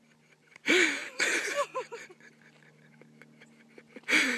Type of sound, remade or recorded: recorded